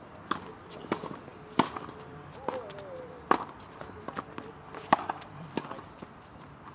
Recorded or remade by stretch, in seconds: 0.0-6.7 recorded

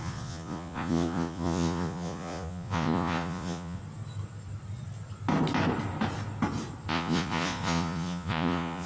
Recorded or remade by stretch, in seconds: 0.0-3.8 remade; 3.8-6.9 recorded; 6.9-8.9 remade

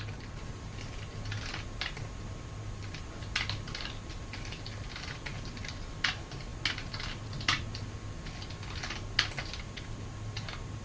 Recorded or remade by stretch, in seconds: 0.0-10.8 recorded

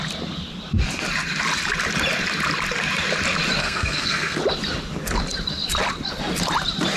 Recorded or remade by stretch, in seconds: 0.0-3.6 recorded; 3.6-4.4 remade; 4.4-7.0 recorded

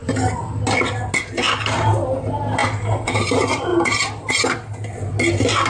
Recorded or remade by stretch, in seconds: 0.0-5.7 recorded

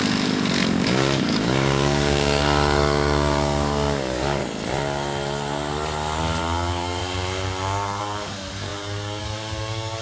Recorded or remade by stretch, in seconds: 0.0-4.4 remade; 4.4-6.4 recorded; 6.4-7.0 remade; 7.0-8.0 recorded; 8.0-10.0 remade